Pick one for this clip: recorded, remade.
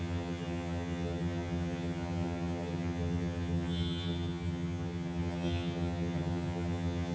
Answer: remade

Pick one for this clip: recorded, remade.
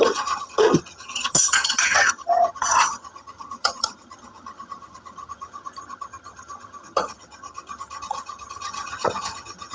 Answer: remade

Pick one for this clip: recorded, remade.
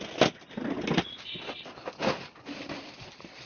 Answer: recorded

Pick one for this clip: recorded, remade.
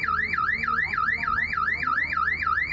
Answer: recorded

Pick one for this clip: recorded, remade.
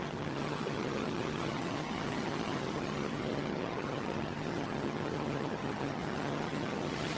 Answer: remade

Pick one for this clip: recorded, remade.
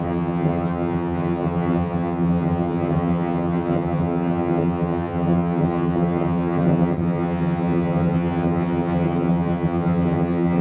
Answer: remade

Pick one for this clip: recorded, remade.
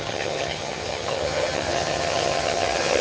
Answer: remade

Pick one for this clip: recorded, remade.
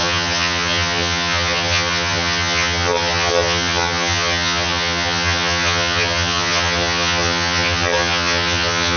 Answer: remade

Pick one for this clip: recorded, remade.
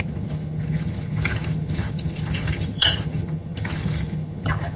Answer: remade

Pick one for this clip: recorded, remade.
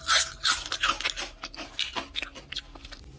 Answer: recorded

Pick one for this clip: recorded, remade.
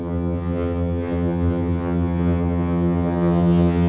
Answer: remade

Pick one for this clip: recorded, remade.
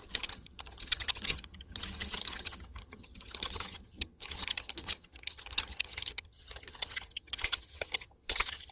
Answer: remade